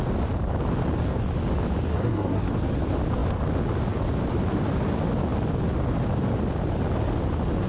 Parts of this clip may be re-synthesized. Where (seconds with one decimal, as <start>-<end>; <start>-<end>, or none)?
1.9-2.5